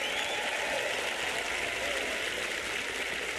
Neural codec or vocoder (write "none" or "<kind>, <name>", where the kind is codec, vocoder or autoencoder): none